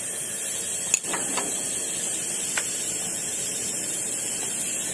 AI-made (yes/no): no